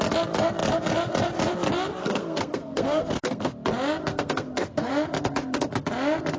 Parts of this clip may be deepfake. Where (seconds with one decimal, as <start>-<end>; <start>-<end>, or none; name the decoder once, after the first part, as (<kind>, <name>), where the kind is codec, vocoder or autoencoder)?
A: 2.0-3.5 (codec, SNAC); 4.1-4.9